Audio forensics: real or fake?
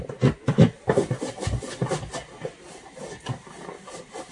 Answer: real